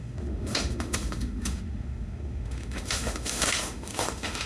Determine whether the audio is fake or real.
fake